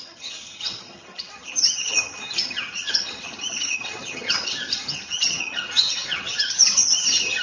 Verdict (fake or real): fake